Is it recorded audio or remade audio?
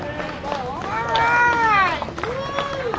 recorded